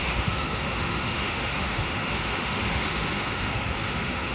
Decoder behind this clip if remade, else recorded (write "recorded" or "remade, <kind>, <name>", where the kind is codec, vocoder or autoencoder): remade, autoencoder, DAC-VAE